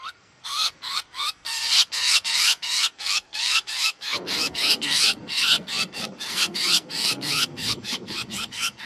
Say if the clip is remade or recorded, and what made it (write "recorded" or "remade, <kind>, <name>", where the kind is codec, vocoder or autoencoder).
remade, codec, SNAC